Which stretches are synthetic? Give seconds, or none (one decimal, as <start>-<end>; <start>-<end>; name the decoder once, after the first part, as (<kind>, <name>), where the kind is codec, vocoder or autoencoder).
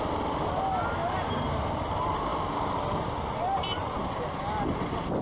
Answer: 1.0-1.6 (vocoder, BigVGAN v2)